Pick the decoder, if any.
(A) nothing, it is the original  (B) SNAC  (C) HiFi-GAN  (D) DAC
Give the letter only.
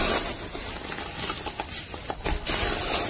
A